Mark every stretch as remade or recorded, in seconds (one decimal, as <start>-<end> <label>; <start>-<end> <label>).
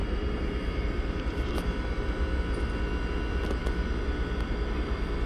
0.0-1.5 remade; 1.5-5.3 recorded